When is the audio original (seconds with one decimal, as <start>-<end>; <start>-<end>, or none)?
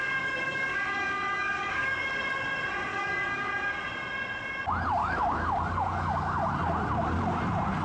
2.1-2.9; 3.5-5.0; 6.5-7.8